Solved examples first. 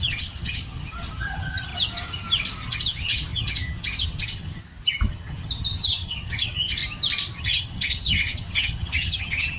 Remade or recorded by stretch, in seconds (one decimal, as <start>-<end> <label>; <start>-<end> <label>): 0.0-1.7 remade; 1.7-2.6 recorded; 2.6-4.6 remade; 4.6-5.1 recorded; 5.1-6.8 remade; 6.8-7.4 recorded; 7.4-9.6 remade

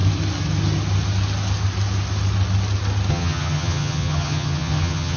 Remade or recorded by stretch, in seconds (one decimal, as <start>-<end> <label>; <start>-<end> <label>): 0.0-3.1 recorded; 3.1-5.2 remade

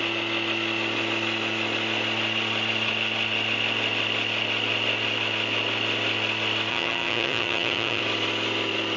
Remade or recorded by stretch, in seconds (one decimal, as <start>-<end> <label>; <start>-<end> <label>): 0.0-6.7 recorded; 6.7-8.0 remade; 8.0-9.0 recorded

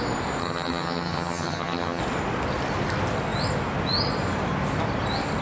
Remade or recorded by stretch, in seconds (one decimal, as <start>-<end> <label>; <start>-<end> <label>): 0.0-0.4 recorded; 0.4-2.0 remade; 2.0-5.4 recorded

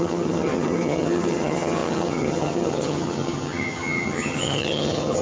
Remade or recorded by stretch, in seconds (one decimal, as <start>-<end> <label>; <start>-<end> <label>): 0.0-5.2 remade

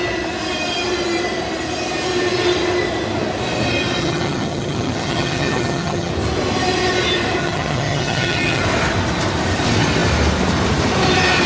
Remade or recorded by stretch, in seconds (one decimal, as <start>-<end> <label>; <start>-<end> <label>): 0.0-4.0 recorded; 4.0-6.1 remade; 6.1-7.4 recorded; 7.4-8.6 remade; 8.6-11.5 recorded